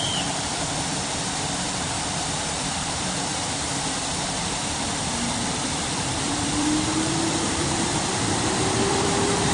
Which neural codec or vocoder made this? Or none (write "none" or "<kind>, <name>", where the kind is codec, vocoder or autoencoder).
vocoder, BigVGAN v2